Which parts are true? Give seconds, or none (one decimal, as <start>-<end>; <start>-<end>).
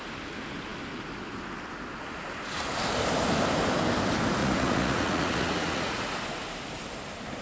0.0-4.4; 6.1-7.4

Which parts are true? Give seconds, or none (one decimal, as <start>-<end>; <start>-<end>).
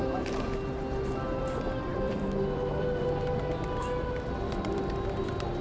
0.0-1.9; 4.8-5.6